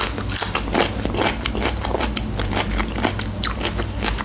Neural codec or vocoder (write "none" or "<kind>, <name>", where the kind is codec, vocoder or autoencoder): none